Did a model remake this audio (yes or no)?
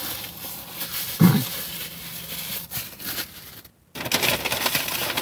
no